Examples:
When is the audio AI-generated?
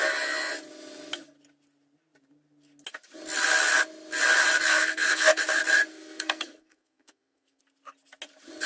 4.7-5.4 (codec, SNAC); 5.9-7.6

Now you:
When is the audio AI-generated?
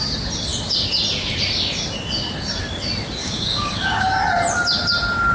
3.2-4.2 (codec, DAC)